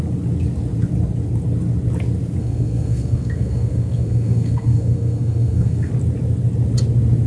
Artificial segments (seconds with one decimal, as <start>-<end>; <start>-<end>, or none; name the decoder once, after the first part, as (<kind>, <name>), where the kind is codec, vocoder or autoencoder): 2.4-5.9 (codec, SNAC)